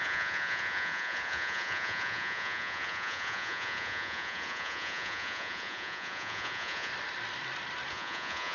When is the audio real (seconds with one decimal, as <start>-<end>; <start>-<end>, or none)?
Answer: 6.9-7.9